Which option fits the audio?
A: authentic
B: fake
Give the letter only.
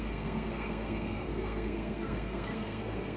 B